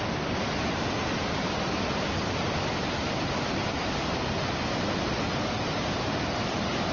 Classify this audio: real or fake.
real